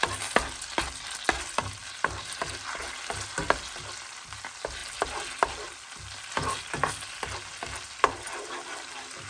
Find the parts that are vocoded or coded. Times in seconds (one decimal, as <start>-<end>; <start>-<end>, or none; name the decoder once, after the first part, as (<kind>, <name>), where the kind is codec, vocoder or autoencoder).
1.8-2.4 (vocoder, BigVGAN v2)

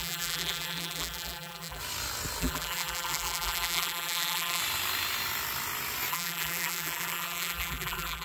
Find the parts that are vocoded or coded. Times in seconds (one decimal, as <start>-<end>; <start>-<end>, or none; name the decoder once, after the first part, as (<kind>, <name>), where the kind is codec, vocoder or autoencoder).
0.0-1.8 (vocoder, BigVGAN v2); 2.4-4.6; 6.1-8.2

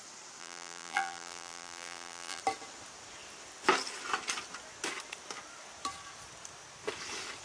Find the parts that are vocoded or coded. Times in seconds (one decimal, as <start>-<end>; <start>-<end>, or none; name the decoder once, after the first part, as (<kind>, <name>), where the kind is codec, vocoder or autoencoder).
0.4-2.4 (vocoder, BigVGAN v2)

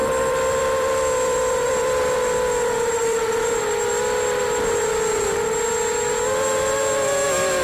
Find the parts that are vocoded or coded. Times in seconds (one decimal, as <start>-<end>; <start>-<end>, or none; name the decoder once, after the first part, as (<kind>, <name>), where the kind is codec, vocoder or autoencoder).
0.0-3.7 (vocoder, BigVGAN v2)